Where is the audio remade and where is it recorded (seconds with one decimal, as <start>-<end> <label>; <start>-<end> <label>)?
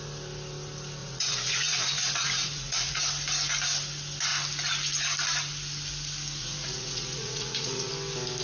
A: 0.0-1.0 recorded; 1.0-3.0 remade; 3.0-6.4 recorded; 6.4-7.9 remade; 7.9-8.4 recorded